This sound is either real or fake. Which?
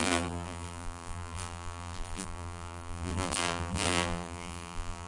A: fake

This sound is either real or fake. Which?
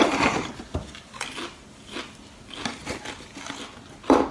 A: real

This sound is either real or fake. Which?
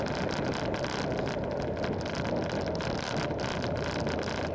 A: real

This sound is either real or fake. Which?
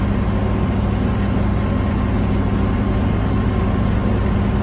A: real